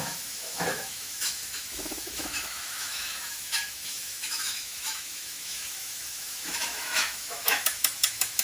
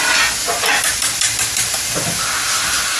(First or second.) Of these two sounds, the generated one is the first